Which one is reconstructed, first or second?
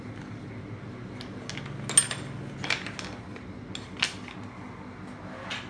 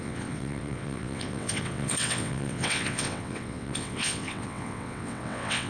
second